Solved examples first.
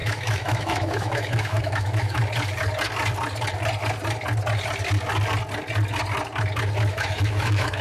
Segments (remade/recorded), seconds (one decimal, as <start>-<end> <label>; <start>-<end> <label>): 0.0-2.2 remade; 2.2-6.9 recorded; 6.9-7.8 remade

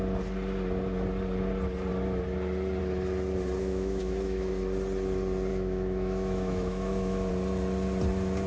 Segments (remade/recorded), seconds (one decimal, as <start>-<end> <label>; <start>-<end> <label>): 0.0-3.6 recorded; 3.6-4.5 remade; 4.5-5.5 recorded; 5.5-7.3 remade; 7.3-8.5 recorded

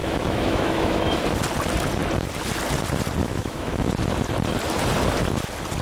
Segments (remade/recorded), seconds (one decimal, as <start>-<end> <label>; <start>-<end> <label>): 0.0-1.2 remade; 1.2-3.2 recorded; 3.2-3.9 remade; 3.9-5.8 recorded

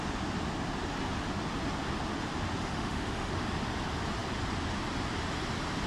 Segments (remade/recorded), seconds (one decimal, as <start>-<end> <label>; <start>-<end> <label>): 0.0-2.6 recorded; 2.6-3.3 remade; 3.3-5.9 recorded